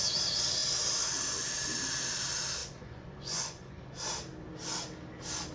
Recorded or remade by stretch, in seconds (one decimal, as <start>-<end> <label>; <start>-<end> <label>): 0.0-2.6 recorded; 2.6-3.9 remade; 3.9-5.5 recorded